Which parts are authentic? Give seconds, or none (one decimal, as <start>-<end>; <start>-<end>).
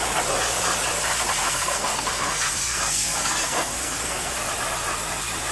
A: 0.0-1.4; 4.5-5.5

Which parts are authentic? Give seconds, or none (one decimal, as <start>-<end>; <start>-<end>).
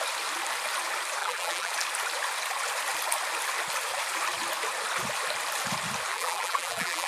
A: 0.0-1.2; 1.7-6.1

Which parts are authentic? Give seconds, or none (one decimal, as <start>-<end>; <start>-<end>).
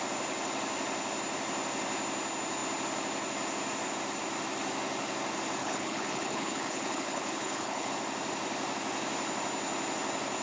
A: 0.0-5.6; 7.9-10.4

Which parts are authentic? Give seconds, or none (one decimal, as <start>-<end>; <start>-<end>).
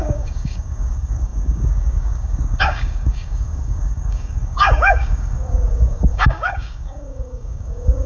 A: none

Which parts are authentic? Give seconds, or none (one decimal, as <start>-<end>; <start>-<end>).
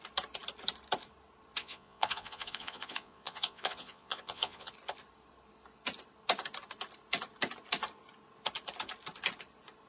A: 0.0-1.6; 4.7-9.9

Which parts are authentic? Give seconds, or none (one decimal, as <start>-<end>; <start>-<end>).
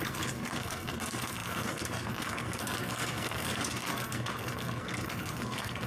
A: none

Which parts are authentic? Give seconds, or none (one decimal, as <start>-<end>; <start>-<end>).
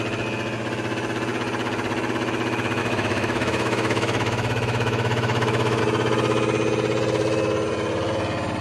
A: 0.0-2.8; 5.8-8.6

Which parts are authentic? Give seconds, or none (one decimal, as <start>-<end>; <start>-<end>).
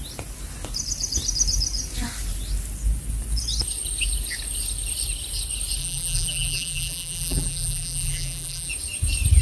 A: 0.0-5.8; 8.7-9.4